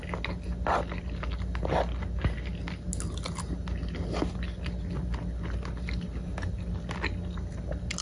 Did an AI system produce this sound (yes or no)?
no